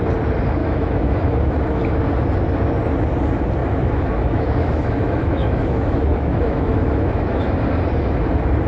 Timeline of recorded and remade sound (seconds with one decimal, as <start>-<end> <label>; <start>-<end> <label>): 0.0-0.6 recorded; 0.6-1.8 remade; 1.8-3.6 recorded; 3.6-7.4 remade; 7.4-8.7 recorded